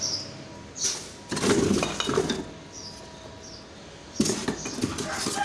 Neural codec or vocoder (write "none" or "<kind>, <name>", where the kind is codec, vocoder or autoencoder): none